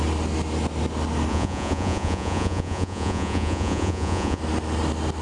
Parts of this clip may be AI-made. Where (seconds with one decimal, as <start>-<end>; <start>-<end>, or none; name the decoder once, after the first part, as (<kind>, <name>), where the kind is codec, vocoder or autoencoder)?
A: 1.3-4.4 (vocoder, Vocos)